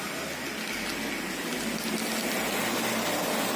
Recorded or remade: recorded